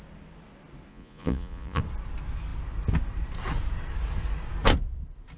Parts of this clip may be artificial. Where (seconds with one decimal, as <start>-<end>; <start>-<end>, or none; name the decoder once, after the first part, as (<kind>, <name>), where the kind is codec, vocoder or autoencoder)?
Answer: 0.9-1.8 (vocoder, Vocos)